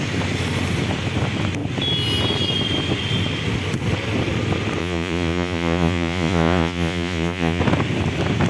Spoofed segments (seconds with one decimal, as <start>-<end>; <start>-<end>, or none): 4.8-7.6